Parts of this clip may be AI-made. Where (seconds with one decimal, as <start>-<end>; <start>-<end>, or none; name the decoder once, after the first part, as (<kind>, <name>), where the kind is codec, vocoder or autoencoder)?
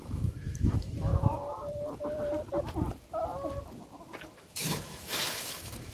0.0-1.1 (autoencoder, DAC-VAE); 4.4-5.9